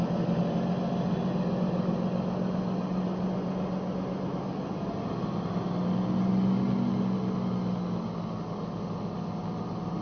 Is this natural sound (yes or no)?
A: yes